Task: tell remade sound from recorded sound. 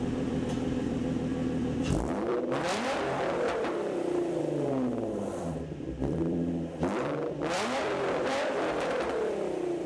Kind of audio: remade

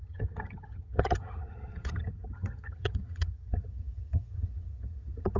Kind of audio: remade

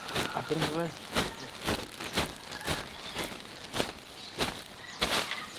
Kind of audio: recorded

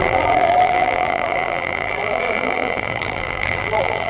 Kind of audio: remade